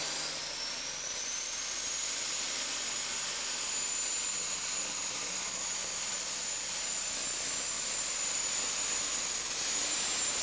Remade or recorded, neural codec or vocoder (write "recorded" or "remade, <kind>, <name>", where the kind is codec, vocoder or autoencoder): recorded